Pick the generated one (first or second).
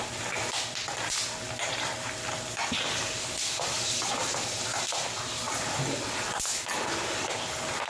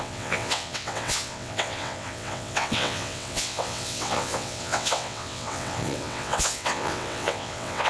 second